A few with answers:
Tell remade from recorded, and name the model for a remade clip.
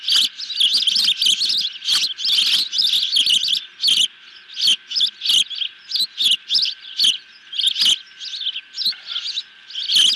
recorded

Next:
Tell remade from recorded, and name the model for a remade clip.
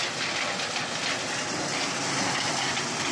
recorded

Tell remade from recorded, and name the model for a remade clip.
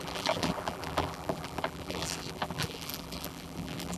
remade, vocoder, BigVGAN v2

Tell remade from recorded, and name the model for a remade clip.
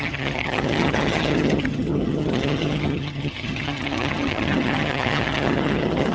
remade, vocoder, HiFi-GAN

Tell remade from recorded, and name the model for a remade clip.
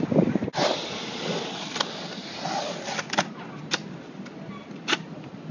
recorded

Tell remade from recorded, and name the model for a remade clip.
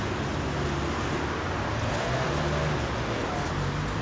recorded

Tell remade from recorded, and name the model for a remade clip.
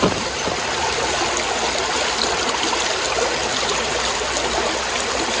recorded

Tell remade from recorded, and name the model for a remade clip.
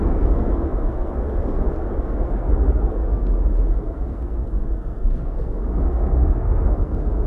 remade, codec, SNAC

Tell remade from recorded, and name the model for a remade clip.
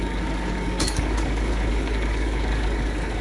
remade, codec, DAC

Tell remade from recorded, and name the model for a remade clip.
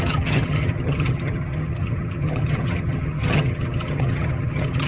remade, vocoder, HiFi-GAN